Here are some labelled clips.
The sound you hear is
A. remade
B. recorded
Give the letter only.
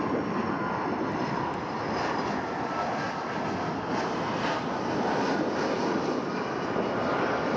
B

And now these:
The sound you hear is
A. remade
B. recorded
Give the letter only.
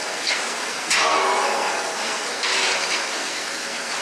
A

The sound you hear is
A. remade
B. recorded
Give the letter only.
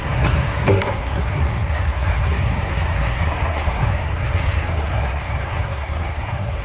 A